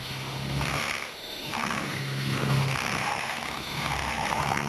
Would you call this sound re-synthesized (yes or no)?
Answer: yes